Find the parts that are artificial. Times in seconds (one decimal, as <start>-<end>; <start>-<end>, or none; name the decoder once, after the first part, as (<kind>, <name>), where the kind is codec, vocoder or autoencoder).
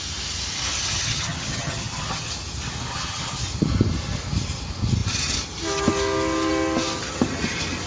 1.0-2.3 (vocoder, HiFi-GAN); 2.9-3.4